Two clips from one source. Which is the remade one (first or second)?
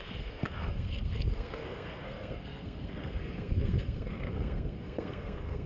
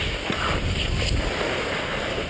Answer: first